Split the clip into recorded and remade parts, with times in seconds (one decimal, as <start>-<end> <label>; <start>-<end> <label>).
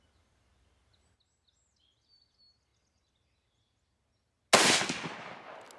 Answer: 0.0-5.8 recorded